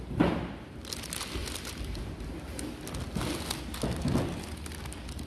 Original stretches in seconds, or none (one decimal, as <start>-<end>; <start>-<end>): 0.0-5.3